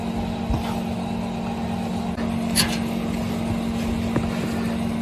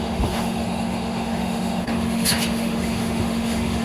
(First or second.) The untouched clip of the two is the first